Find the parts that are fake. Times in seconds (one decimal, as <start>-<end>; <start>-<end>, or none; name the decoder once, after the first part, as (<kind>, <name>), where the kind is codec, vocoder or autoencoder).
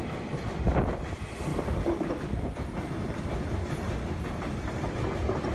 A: none